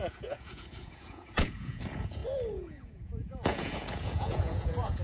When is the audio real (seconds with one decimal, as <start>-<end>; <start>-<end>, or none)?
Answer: none